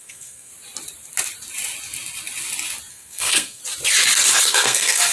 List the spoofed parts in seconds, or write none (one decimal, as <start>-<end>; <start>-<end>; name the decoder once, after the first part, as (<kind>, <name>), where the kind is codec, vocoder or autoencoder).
0.0-0.5 (codec, SNAC); 2.9-3.6; 4.4-5.1

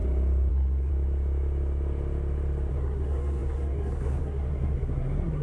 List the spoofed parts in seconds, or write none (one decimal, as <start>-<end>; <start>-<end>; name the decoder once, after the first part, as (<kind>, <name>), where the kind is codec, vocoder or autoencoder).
0.5-0.9 (codec, SNAC); 2.7-5.4

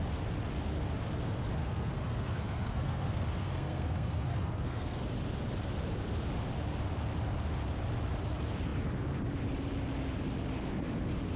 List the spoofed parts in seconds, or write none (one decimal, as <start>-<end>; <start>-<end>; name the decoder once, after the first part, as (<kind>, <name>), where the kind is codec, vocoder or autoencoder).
1.6-5.0 (codec, SNAC)

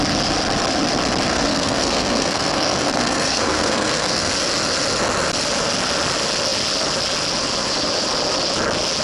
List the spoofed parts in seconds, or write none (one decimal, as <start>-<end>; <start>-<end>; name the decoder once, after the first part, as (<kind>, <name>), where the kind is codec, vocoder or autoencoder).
1.3-4.3 (codec, SNAC)